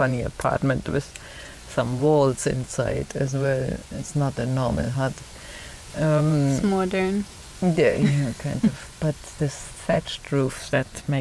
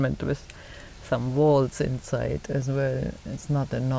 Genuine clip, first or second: second